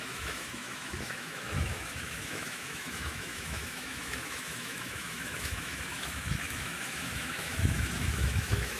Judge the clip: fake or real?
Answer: fake